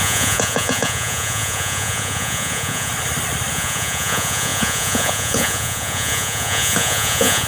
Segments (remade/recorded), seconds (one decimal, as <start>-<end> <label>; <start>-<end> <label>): 0.0-2.9 remade; 2.9-3.5 recorded; 3.5-7.5 remade